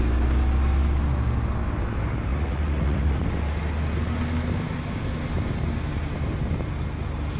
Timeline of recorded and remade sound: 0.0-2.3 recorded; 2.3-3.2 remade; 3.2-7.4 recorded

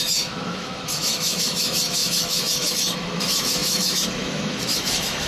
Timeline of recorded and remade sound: 0.0-5.3 remade